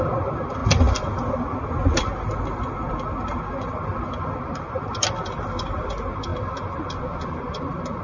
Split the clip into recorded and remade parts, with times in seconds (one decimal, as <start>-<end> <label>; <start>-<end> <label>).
0.0-8.0 recorded